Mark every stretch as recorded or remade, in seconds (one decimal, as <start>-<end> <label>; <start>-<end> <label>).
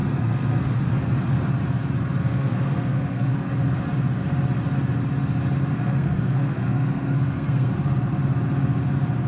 0.0-0.9 remade; 0.9-2.2 recorded; 2.2-3.3 remade; 3.3-5.7 recorded; 5.7-7.7 remade; 7.7-9.3 recorded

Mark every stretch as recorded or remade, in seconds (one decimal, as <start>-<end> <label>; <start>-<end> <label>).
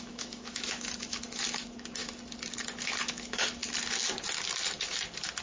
0.0-2.0 remade; 2.0-3.0 recorded; 3.0-3.6 remade; 3.6-5.4 recorded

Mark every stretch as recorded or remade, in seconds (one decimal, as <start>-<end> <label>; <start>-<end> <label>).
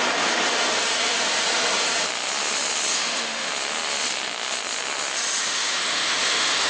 0.0-2.9 recorded; 2.9-3.5 remade; 3.5-5.4 recorded; 5.4-6.7 remade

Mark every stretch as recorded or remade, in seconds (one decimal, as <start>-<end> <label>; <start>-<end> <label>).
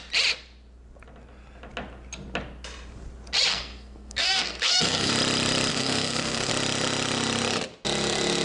0.0-3.5 recorded; 3.5-5.1 remade; 5.1-5.7 recorded; 5.7-6.5 remade; 6.5-8.4 recorded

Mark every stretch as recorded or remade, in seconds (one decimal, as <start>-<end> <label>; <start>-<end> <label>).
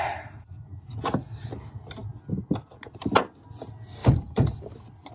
0.0-4.0 recorded; 4.0-5.1 remade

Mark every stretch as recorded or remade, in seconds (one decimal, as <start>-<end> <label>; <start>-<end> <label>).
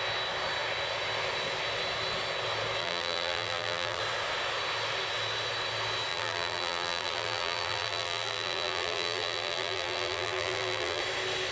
0.0-2.8 recorded; 2.8-4.0 remade; 4.0-6.1 recorded; 6.1-11.0 remade; 11.0-11.5 recorded